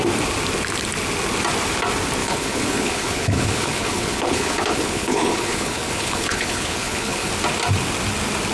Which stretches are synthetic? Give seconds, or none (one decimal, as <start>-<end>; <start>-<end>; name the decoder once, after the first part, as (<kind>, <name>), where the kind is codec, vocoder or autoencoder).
2.2-7.3 (codec, HILCodec)